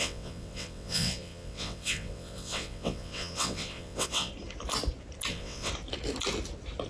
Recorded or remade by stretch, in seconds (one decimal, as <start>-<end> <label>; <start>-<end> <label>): 0.0-4.3 remade; 4.3-5.3 recorded; 5.3-5.7 remade; 5.7-6.9 recorded

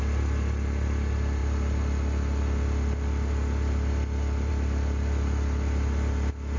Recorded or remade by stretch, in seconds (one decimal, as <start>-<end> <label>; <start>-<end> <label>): 0.0-6.6 recorded

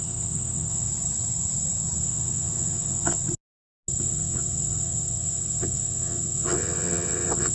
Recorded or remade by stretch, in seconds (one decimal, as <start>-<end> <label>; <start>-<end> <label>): 0.0-0.9 remade; 0.9-2.0 recorded; 2.0-3.2 remade; 3.2-4.0 recorded; 4.0-7.5 remade

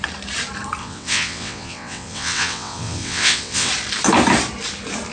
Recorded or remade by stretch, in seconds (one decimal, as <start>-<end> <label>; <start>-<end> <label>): 0.0-0.8 recorded; 0.8-3.7 remade; 3.7-5.1 recorded

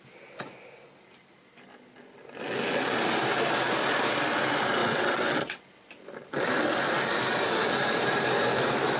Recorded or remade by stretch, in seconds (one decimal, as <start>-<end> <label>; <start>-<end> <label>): 0.0-4.8 recorded; 4.8-5.6 remade; 5.6-9.0 recorded

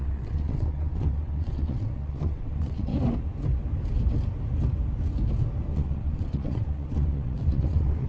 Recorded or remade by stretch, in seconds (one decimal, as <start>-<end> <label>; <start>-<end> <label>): 0.0-2.9 remade; 2.9-5.7 recorded; 5.7-8.1 remade

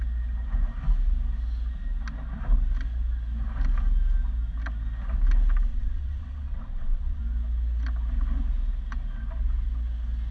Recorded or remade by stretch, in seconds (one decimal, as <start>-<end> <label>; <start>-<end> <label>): 0.0-5.7 recorded; 5.7-7.2 remade; 7.2-10.3 recorded